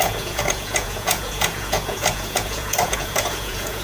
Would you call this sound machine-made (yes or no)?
yes